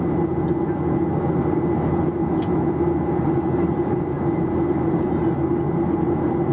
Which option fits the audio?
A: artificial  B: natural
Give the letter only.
B